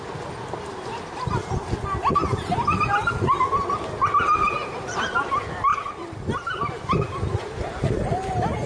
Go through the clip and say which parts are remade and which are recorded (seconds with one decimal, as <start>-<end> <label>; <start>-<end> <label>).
0.0-4.6 recorded; 4.6-5.2 remade; 5.2-5.7 recorded; 5.7-6.7 remade; 6.7-8.7 recorded